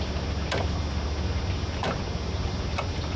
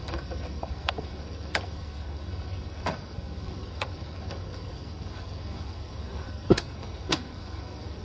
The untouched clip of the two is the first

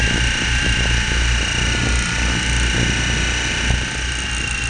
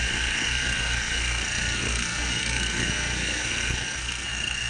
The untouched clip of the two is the first